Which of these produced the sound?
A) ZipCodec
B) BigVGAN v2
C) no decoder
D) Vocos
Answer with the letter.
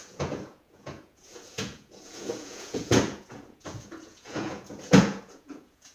D